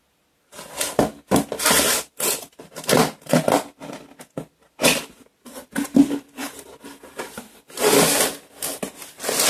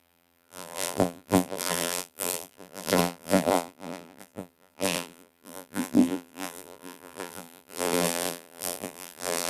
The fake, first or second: second